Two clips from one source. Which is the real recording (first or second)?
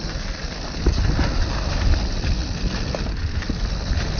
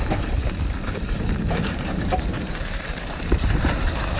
first